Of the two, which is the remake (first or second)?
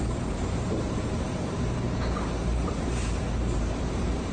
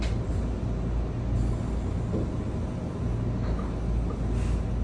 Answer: first